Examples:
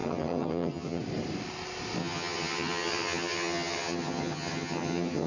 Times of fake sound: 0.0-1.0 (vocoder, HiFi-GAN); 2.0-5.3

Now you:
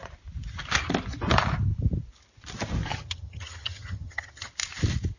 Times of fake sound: 2.9-4.5 (vocoder, HiFi-GAN)

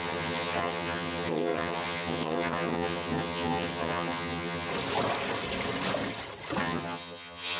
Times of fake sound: 0.0-4.7 (vocoder, HiFi-GAN); 6.6-7.6

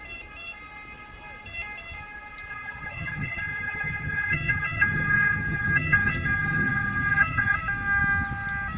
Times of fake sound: 2.5-7.6 (vocoder, HiFi-GAN)